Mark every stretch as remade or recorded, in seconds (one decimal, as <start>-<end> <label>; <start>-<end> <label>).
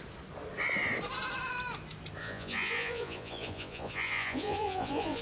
0.0-2.2 recorded; 2.2-5.2 remade